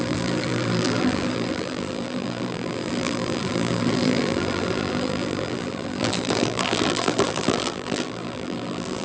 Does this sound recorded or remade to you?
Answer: remade